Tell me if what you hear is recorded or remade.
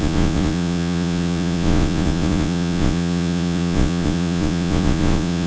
remade